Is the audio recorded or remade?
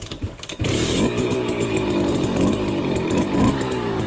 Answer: remade